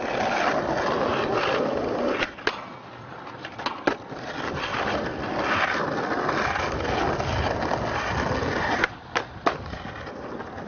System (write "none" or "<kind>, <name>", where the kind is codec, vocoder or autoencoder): none